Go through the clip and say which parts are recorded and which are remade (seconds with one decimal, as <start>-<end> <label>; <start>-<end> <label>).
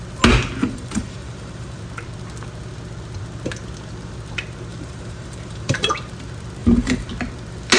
0.0-0.6 recorded; 0.6-1.8 remade; 1.8-4.7 recorded; 4.7-5.9 remade; 5.9-6.6 recorded; 6.6-7.1 remade; 7.1-7.8 recorded